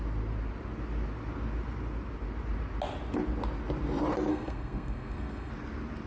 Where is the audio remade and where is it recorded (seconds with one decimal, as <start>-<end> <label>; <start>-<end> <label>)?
0.0-4.3 recorded; 4.3-5.5 remade; 5.5-6.1 recorded

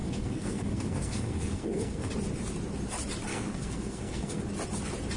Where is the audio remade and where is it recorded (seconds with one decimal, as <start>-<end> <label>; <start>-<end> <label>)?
0.0-2.1 remade; 2.1-3.3 recorded; 3.3-4.4 remade; 4.4-5.2 recorded